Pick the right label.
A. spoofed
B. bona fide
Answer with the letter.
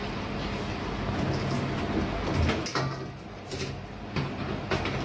B